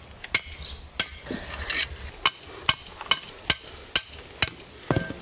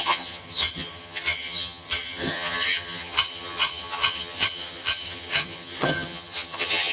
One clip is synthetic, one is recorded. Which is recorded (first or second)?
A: first